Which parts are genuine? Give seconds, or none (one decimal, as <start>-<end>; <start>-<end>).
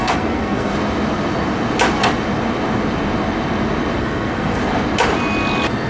0.7-4.0; 4.6-5.9